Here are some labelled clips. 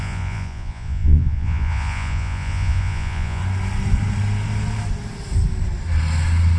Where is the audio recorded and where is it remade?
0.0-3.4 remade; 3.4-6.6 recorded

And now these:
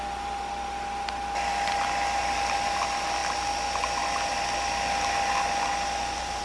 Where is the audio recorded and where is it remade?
0.0-6.4 recorded

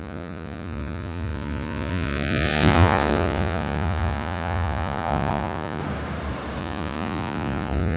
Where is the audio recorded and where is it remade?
0.0-5.8 remade; 5.8-6.6 recorded; 6.6-8.0 remade

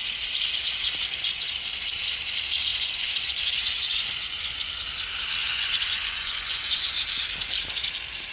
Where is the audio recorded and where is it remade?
0.0-2.7 recorded; 2.7-4.8 remade; 4.8-5.4 recorded; 5.4-6.9 remade; 6.9-8.3 recorded